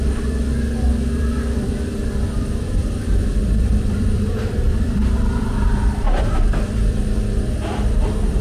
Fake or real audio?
fake